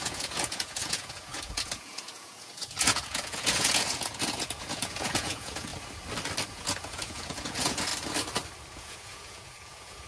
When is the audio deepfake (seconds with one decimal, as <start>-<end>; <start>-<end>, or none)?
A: 0.0-5.7; 6.5-7.9; 8.7-10.1